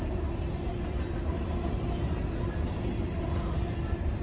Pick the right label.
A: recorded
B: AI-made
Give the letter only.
A